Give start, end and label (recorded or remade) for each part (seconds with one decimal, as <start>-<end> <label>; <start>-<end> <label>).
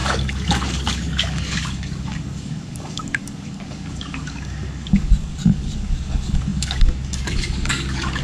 0.0-8.2 remade